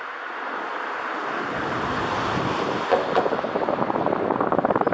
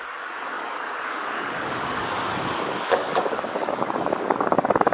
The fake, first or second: second